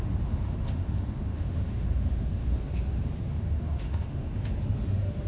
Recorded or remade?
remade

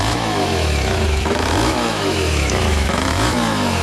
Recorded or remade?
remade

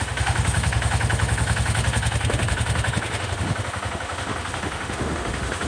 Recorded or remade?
remade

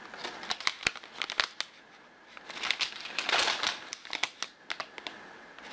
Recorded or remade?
recorded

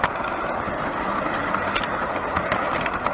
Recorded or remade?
recorded